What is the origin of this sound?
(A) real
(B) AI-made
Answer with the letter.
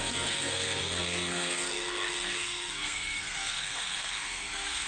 B